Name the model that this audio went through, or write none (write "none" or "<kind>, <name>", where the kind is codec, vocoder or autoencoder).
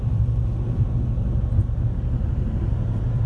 none